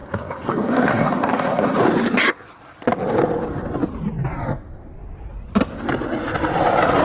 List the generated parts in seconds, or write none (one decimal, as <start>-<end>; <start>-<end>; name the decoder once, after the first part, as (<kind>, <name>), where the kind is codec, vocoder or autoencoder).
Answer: 0.0-1.8 (codec, SNAC)